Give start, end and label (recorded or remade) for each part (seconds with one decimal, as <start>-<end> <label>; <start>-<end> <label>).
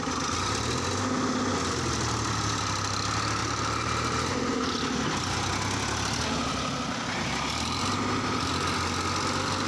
0.0-3.4 recorded; 3.4-4.6 remade; 4.6-9.7 recorded